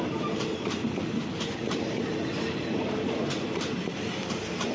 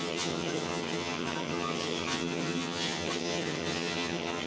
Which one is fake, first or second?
second